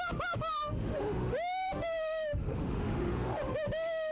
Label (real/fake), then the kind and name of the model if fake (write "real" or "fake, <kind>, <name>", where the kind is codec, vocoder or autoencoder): fake, autoencoder, DAC-VAE